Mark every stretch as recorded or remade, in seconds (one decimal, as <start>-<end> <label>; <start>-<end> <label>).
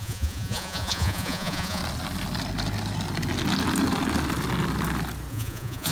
0.0-1.8 remade; 1.8-5.3 recorded; 5.3-5.9 remade